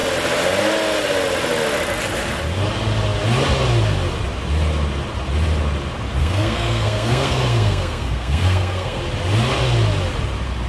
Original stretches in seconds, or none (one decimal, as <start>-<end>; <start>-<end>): 0.0-6.2; 9.0-10.7